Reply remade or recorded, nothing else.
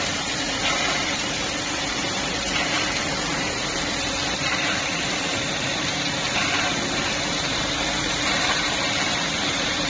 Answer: remade